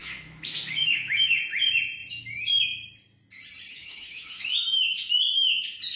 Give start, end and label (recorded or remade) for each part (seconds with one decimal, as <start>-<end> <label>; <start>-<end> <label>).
0.0-1.4 remade; 1.4-3.7 recorded; 3.7-5.6 remade; 5.6-6.0 recorded

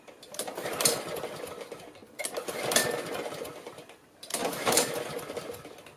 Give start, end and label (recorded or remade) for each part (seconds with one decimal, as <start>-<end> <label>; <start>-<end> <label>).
0.0-4.4 recorded; 4.4-5.0 remade; 5.0-6.0 recorded

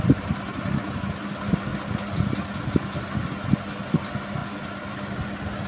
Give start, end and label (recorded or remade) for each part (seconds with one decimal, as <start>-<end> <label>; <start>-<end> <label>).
0.0-5.7 recorded

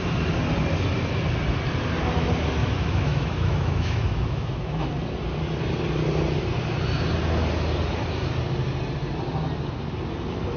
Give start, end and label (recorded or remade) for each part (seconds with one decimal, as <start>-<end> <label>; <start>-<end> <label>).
0.0-2.6 recorded; 2.6-4.9 remade; 4.9-10.6 recorded

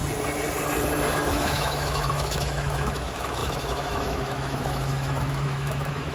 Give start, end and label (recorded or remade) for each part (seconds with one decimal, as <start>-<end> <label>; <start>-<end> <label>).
0.0-1.3 recorded; 1.3-6.1 remade